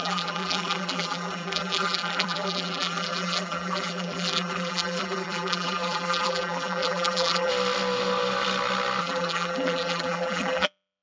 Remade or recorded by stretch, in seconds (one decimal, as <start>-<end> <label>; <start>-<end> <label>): 0.0-7.5 remade; 7.5-9.0 recorded; 9.0-11.0 remade

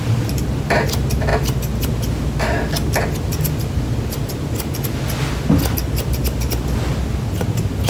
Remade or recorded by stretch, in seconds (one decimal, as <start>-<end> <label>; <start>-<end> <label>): 0.0-7.9 recorded

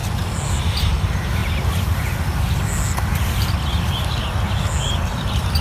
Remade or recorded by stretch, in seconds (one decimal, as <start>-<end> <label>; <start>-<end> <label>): 0.0-0.8 recorded; 0.8-1.4 remade; 1.4-4.8 recorded; 4.8-5.6 remade

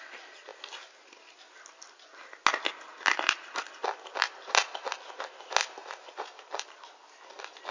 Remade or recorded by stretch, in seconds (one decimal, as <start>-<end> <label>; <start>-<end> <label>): 0.0-5.8 recorded; 5.8-6.6 remade; 6.6-7.7 recorded

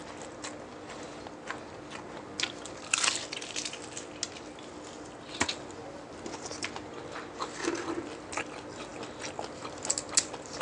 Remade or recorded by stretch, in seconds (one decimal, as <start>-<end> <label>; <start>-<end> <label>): 0.0-10.6 recorded

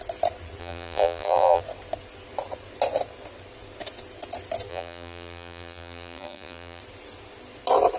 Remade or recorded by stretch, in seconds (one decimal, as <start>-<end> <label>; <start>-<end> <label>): 0.0-0.6 recorded; 0.6-1.6 remade; 1.6-4.7 recorded; 4.7-6.8 remade; 6.8-8.0 recorded

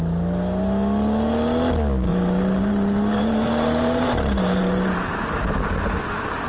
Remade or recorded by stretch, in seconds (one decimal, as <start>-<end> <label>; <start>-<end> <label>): 0.0-2.1 recorded; 2.1-6.0 remade; 6.0-6.5 recorded